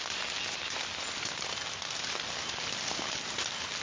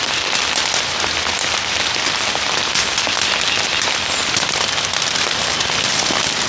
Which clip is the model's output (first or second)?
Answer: second